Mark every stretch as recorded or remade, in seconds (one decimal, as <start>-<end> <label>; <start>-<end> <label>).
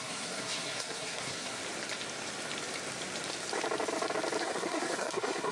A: 0.0-1.6 remade; 1.6-4.4 recorded; 4.4-5.5 remade